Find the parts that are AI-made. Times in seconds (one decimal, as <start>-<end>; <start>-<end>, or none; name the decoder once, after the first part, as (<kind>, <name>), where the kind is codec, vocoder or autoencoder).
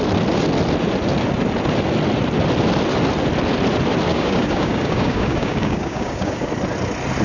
4.1-6.5 (codec, DAC)